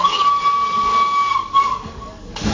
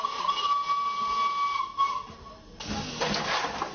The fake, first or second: first